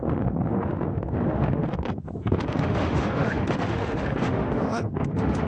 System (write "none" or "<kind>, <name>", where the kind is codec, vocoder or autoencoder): autoencoder, DAC-VAE